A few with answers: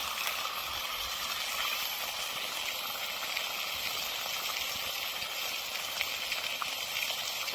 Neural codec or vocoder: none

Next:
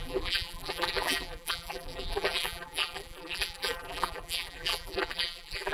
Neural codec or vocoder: vocoder, BigVGAN v2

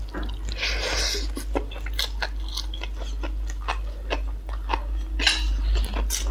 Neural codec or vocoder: none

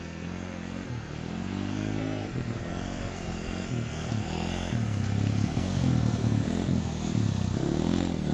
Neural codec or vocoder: codec, SNAC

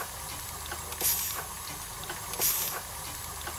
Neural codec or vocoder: none